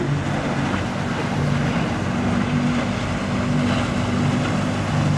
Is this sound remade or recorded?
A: recorded